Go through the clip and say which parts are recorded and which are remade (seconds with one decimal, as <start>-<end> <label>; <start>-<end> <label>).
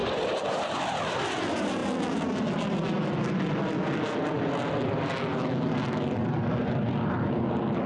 0.0-1.8 remade; 1.8-4.7 recorded; 4.7-7.9 remade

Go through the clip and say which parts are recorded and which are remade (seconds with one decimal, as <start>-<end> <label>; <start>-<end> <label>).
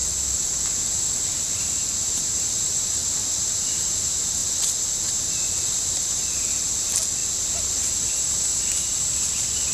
0.0-1.4 recorded; 1.4-9.7 remade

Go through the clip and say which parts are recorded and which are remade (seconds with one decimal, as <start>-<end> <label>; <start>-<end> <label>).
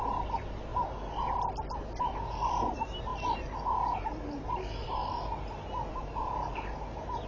0.0-0.7 remade; 0.7-2.5 recorded; 2.5-7.3 remade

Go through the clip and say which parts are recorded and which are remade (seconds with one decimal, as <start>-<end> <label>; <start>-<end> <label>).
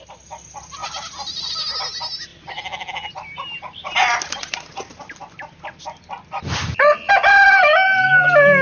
0.0-0.8 recorded; 0.8-1.5 remade; 1.5-8.6 recorded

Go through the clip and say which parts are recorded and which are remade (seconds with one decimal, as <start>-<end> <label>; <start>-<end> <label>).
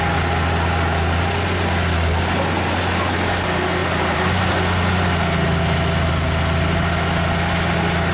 0.0-3.8 recorded; 3.8-4.5 remade; 4.5-8.1 recorded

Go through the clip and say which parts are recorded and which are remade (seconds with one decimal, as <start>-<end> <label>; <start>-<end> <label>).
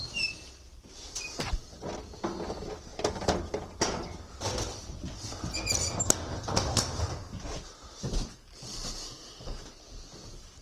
0.0-10.6 recorded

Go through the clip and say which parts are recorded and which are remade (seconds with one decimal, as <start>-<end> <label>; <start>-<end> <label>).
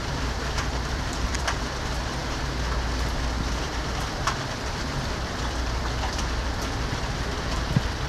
0.0-2.2 remade; 2.2-3.6 recorded; 3.6-8.1 remade